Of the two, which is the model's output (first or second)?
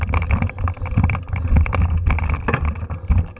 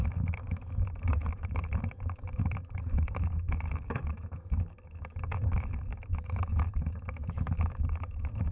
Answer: second